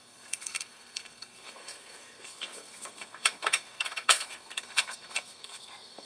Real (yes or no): no